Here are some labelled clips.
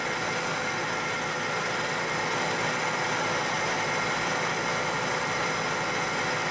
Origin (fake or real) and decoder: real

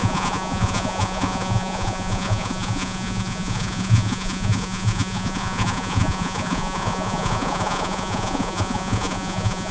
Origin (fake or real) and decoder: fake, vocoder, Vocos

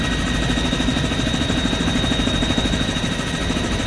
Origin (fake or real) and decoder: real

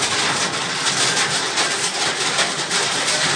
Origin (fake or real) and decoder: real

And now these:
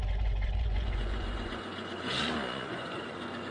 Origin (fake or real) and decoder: fake, vocoder, Vocos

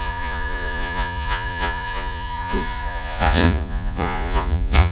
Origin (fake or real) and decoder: fake, vocoder, Vocos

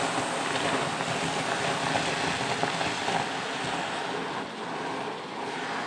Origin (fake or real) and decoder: real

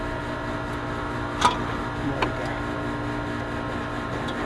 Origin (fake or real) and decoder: real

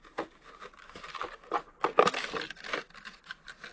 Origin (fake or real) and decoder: real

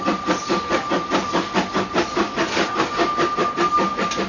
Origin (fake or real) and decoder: real